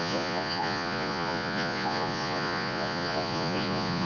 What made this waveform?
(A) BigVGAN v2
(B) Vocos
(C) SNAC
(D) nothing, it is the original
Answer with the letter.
B